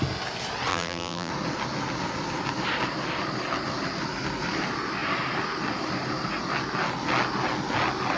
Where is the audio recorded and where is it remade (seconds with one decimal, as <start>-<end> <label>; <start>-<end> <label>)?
0.0-0.7 recorded; 0.7-1.3 remade; 1.3-8.2 recorded